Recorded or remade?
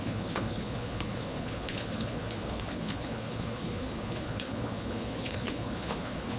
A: remade